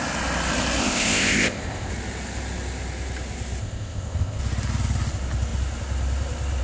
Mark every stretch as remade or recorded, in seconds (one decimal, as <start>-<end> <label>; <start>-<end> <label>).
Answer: 0.0-0.8 recorded; 0.8-1.9 remade; 1.9-3.6 recorded; 3.6-4.4 remade; 4.4-6.6 recorded